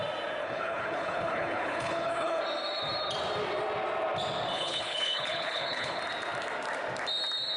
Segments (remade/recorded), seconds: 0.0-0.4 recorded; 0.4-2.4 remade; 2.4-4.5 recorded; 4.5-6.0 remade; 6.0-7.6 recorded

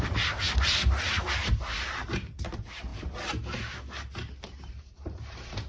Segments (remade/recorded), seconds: 0.0-4.7 recorded; 4.7-5.7 remade

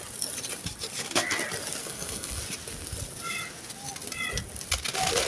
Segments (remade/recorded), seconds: 0.0-1.8 recorded; 1.8-2.4 remade; 2.4-5.3 recorded

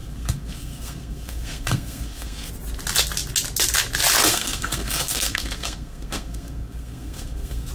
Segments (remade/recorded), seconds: 0.0-2.5 remade; 2.5-4.3 recorded; 4.3-7.7 remade

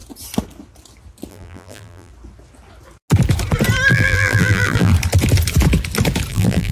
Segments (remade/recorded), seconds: 0.0-1.3 recorded; 1.3-2.1 remade; 2.1-3.9 recorded; 3.9-4.9 remade; 4.9-6.3 recorded; 6.3-6.7 remade

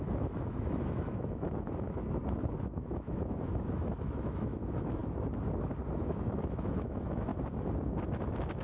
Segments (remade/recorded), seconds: 0.0-2.0 remade; 2.0-2.6 recorded; 2.6-5.0 remade; 5.0-6.0 recorded; 6.0-7.3 remade; 7.3-8.0 recorded; 8.0-8.6 remade